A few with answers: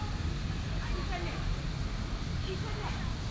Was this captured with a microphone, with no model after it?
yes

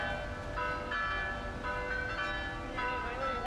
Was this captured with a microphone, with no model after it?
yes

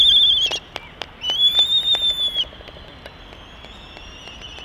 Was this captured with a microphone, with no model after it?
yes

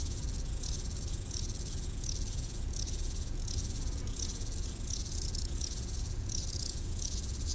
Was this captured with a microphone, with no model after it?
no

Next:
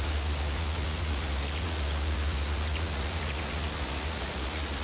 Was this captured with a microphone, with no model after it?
no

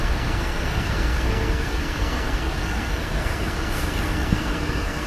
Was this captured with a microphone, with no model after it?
no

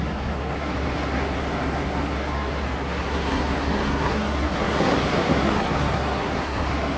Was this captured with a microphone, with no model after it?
no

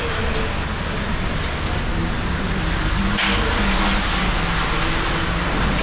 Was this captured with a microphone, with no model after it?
yes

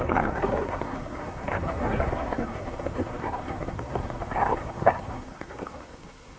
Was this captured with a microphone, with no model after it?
no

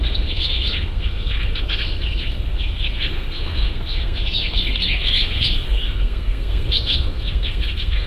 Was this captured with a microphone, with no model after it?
no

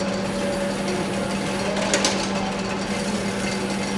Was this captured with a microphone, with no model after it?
yes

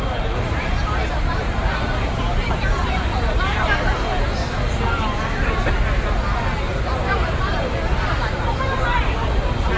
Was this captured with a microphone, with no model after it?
yes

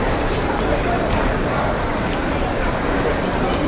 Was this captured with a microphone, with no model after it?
no